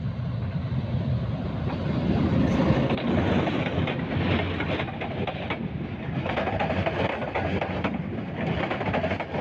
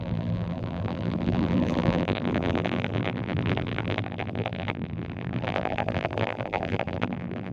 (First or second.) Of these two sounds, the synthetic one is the second